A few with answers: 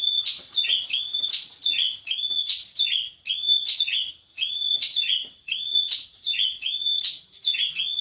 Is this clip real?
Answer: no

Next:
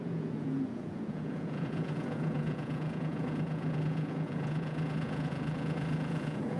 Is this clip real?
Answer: no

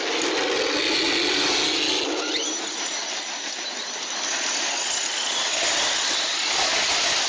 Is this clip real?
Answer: yes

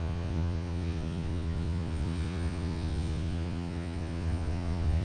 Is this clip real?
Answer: no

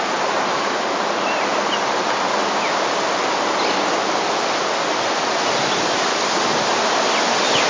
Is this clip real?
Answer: yes